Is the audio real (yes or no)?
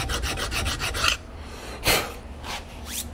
no